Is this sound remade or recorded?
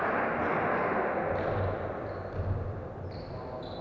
recorded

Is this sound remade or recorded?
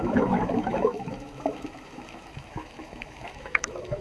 remade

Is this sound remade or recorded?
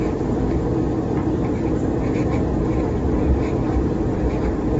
recorded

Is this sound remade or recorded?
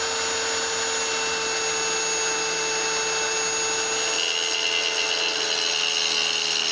recorded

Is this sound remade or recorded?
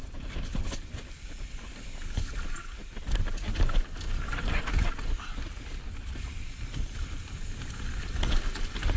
recorded